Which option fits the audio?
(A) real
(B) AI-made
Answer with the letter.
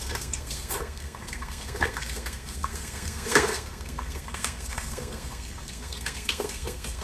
B